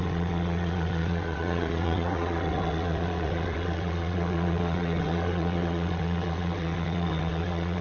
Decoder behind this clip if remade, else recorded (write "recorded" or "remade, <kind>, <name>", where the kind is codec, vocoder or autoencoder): remade, vocoder, WaveNeXt